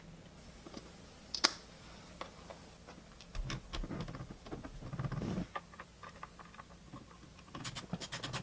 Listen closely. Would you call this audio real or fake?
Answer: real